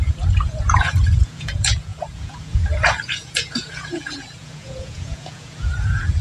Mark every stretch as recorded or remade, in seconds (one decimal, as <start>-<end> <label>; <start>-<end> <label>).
0.0-6.2 remade